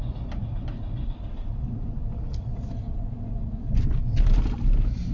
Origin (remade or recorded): recorded